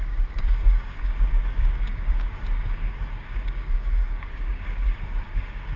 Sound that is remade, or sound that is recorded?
remade